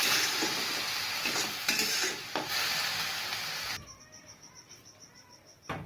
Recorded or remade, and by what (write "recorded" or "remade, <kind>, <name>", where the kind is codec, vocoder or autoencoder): recorded